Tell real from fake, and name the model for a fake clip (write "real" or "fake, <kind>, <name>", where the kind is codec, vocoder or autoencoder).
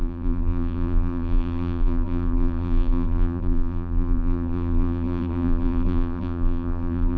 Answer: fake, vocoder, BigVGAN v2